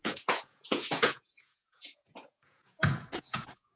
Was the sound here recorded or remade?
remade